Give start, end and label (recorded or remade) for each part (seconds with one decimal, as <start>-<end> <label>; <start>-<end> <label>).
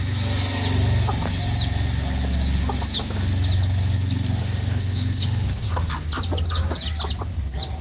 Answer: 0.0-4.4 recorded; 4.4-5.9 remade; 5.9-7.8 recorded